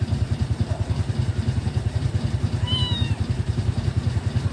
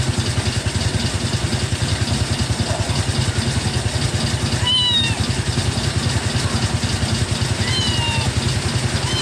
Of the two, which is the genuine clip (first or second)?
second